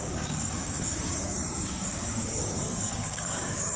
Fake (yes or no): yes